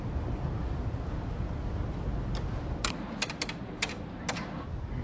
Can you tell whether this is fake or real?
real